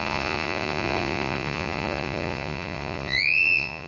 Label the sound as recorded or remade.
remade